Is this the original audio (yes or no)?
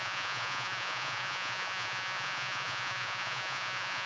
no